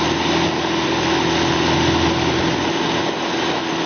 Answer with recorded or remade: recorded